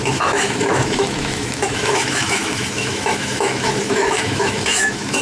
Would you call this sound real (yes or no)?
no